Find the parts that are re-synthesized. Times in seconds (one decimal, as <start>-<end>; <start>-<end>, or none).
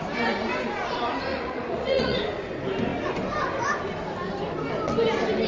1.3-2.2